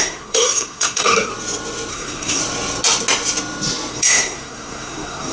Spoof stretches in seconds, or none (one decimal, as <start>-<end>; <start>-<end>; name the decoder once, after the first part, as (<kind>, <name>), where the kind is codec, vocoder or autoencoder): 0.0-1.3 (codec, SNAC); 1.9-2.4; 3.9-5.3